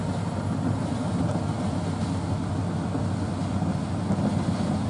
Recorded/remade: recorded